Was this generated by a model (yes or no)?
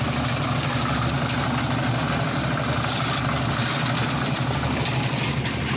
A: no